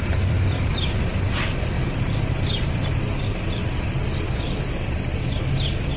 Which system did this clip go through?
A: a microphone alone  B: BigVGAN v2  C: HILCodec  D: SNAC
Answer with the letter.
B